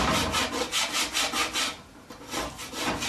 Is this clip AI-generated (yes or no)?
no